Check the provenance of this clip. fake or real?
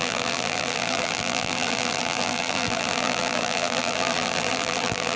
fake